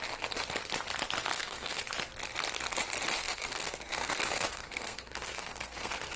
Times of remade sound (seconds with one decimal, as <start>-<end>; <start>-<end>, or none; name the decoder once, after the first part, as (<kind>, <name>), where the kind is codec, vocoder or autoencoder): 1.3-1.8 (codec, SNAC); 3.2-6.2